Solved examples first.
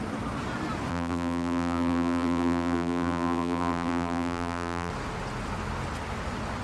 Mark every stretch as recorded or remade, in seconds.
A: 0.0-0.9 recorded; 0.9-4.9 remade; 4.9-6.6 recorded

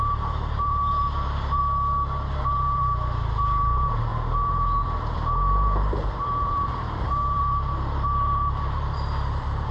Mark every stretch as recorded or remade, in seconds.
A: 0.0-1.6 remade; 1.6-2.3 recorded; 2.3-9.7 remade

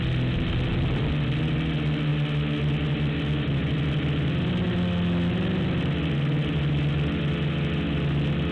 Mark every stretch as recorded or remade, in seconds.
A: 0.0-8.5 recorded

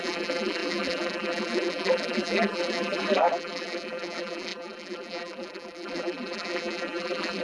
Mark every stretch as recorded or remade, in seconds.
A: 0.0-7.4 remade